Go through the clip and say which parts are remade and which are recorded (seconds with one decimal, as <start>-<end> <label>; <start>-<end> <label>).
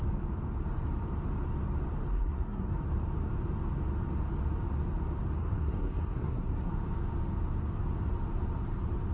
0.0-2.1 recorded; 2.1-2.7 remade; 2.7-5.4 recorded; 5.4-6.7 remade; 6.7-9.1 recorded